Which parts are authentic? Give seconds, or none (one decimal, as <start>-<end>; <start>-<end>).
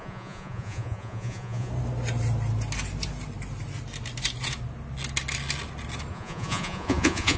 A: 1.7-6.1